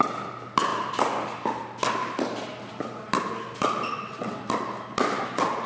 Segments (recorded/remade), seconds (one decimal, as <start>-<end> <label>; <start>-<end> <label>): 0.0-3.9 recorded; 3.9-4.4 remade; 4.4-5.7 recorded